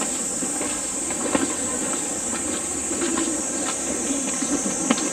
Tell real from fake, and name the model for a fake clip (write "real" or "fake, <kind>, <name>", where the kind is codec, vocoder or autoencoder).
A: real